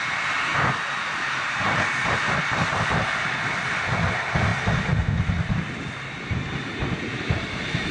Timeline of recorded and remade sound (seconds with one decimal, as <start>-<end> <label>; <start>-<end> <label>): 0.0-0.5 remade; 0.5-1.1 recorded; 1.1-4.5 remade; 4.5-5.5 recorded; 5.5-7.9 remade